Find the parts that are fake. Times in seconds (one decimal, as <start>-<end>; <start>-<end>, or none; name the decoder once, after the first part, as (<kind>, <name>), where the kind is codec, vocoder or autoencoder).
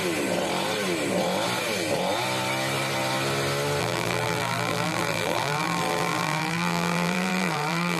3.8-8.0 (vocoder, BigVGAN v2)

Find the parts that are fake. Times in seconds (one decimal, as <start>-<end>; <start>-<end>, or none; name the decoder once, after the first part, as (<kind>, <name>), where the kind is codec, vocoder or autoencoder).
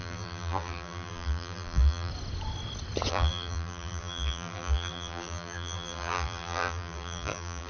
0.0-2.1 (vocoder, BigVGAN v2); 3.1-7.7